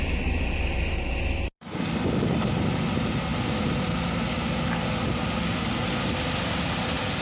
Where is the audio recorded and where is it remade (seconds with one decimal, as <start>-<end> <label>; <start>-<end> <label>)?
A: 0.0-3.3 recorded; 3.3-4.1 remade; 4.1-7.2 recorded

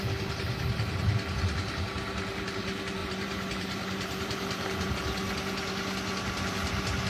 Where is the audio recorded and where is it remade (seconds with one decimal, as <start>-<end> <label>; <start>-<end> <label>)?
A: 0.0-3.0 recorded; 3.0-4.9 remade; 4.9-7.1 recorded

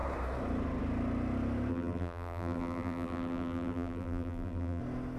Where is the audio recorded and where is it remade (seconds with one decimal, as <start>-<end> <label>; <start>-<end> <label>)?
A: 0.0-1.7 recorded; 1.7-4.8 remade; 4.8-5.2 recorded